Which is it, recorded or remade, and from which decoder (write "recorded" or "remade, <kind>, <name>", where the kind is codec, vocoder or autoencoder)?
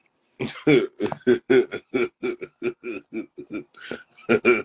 recorded